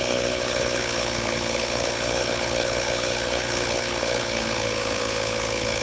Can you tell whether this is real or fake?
fake